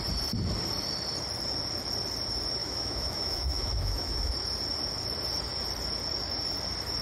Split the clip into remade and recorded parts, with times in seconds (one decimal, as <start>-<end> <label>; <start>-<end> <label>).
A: 0.0-2.6 recorded; 2.6-4.3 remade; 4.3-7.0 recorded